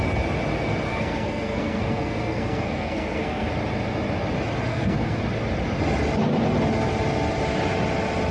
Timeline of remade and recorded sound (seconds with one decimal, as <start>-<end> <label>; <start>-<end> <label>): 0.0-0.9 recorded; 0.9-3.5 remade; 3.5-4.7 recorded; 4.7-5.2 remade; 5.2-8.3 recorded